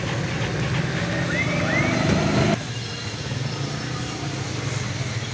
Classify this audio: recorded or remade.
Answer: recorded